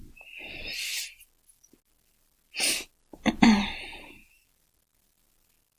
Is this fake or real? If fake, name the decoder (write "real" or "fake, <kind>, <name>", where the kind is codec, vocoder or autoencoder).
real